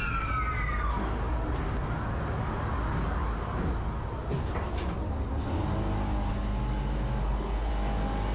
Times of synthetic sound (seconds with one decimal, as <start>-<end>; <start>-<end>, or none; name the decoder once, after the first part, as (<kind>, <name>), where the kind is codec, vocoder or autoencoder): 7.2-7.7 (codec, HILCodec)

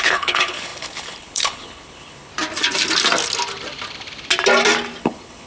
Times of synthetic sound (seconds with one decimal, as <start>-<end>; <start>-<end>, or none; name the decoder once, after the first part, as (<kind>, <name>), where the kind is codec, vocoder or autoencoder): 0.0-2.3 (codec, HILCodec); 5.0-5.5

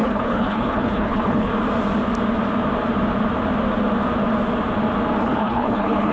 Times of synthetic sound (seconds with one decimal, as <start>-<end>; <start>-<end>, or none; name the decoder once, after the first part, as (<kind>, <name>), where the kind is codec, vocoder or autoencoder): 0.0-1.5 (codec, HILCodec); 5.2-6.1

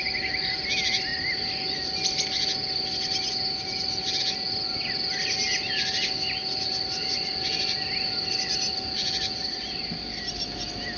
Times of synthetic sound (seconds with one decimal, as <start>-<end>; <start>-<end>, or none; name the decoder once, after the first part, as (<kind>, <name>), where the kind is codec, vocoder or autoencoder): none

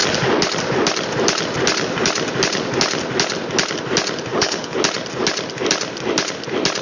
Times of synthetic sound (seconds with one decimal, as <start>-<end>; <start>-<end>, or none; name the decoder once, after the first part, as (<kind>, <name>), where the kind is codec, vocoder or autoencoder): 4.3-4.8 (codec, HILCodec)